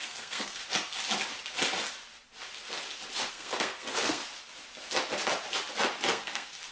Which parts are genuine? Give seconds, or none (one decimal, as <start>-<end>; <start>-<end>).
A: 0.6-3.3; 4.2-6.1